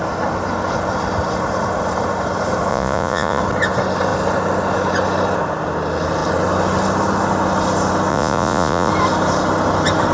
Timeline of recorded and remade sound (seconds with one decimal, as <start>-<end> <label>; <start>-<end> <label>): 0.0-2.7 recorded; 2.7-3.4 remade; 3.4-8.1 recorded; 8.1-8.9 remade; 8.9-10.1 recorded